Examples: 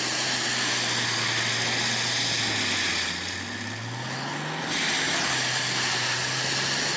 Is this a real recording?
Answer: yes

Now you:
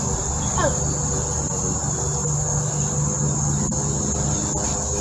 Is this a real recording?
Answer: yes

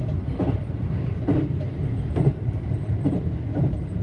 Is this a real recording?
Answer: no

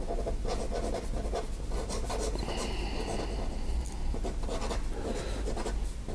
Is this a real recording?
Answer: yes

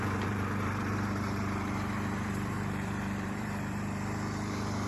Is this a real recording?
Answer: no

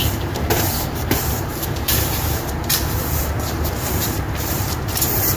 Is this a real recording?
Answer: no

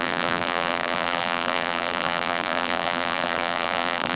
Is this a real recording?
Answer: no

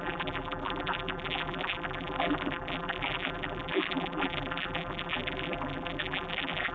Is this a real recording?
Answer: no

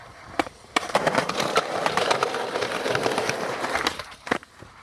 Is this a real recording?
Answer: no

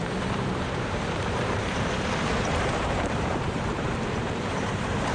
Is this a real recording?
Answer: no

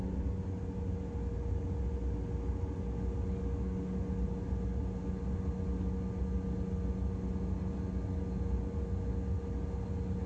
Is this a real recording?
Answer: yes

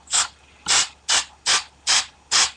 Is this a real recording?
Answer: yes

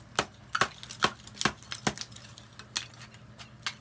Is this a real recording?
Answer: yes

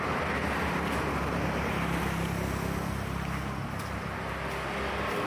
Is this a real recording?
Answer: yes